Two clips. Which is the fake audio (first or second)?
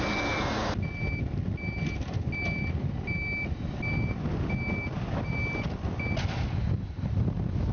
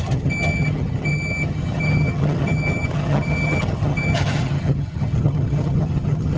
second